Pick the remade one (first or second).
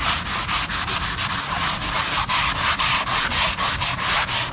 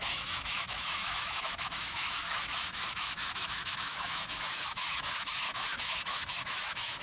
second